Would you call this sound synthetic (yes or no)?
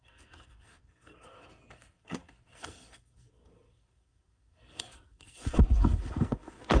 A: yes